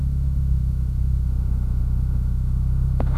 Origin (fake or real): fake